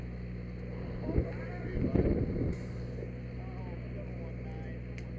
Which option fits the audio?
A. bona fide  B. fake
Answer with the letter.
A